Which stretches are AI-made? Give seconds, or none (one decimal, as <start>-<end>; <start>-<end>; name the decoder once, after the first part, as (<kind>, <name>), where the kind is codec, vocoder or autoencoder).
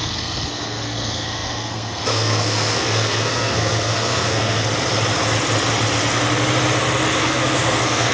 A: 0.0-4.6 (codec, SNAC); 7.2-8.1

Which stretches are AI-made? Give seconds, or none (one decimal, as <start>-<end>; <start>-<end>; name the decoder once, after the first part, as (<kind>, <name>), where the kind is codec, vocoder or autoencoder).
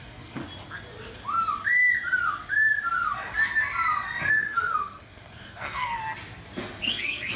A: 0.0-0.4 (codec, SNAC); 4.3-6.0; 6.9-7.4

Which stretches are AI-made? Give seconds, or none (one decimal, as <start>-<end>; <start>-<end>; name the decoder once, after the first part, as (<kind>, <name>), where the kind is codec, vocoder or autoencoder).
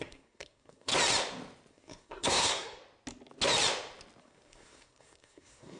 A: 0.0-0.9 (codec, SNAC); 1.7-2.8; 4.2-5.8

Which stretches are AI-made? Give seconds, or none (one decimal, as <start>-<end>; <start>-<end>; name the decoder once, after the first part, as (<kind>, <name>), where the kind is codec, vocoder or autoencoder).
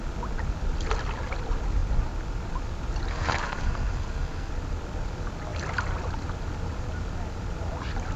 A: 3.1-4.5 (codec, SNAC)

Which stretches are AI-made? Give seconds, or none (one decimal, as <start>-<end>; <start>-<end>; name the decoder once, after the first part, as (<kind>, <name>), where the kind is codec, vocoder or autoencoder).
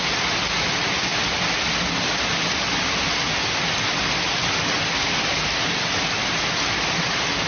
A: none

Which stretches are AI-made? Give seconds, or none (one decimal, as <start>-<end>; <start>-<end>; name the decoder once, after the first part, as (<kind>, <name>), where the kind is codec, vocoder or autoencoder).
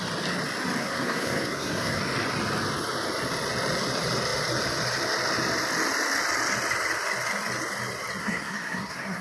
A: 0.8-2.0 (codec, SNAC); 8.2-9.2